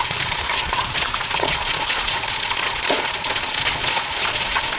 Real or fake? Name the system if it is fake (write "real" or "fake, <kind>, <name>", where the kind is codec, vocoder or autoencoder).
fake, vocoder, Vocos